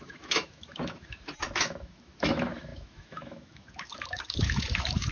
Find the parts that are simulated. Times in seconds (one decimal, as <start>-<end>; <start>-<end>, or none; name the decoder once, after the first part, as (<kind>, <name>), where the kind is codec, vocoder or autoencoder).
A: 0.0-5.1 (autoencoder, DAC-VAE)